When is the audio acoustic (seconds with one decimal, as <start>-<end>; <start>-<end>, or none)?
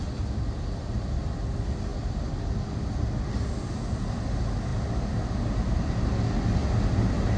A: 0.0-7.4